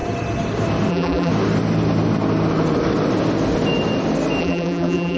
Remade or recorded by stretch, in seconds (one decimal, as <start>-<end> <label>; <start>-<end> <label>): 0.0-0.9 recorded; 0.9-1.3 remade; 1.3-4.4 recorded; 4.4-5.2 remade